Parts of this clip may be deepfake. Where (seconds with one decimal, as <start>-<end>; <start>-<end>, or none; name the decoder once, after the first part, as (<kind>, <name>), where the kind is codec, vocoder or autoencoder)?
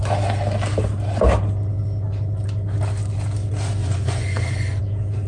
3.8-4.8 (vocoder, Vocos)